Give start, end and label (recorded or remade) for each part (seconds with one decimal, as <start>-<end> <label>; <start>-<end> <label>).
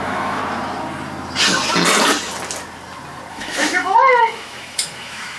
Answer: 0.0-0.4 remade; 0.4-3.3 recorded; 3.3-5.4 remade